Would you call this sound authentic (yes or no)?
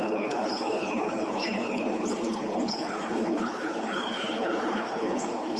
no